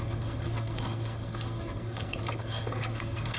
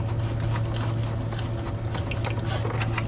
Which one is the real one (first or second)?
second